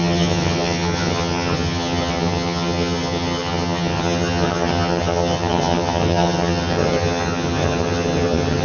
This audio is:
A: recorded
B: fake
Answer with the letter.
B